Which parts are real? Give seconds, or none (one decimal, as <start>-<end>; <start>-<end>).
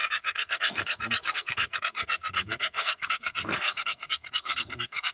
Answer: none